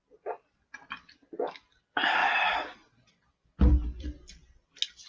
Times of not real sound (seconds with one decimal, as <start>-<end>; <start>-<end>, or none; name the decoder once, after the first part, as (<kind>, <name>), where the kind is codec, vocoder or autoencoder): 1.2-1.8 (vocoder, BigVGAN v2); 2.2-3.6